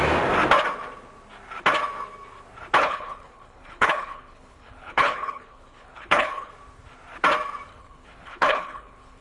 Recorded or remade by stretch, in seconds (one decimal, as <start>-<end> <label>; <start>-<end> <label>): 0.0-2.8 recorded; 2.8-6.5 remade; 6.5-7.7 recorded; 7.7-9.2 remade